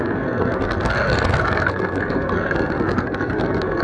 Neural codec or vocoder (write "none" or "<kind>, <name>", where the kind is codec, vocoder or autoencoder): codec, SNAC